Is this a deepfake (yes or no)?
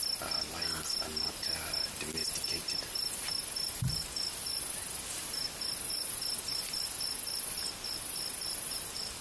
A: no